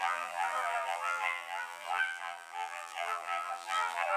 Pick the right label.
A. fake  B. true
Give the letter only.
A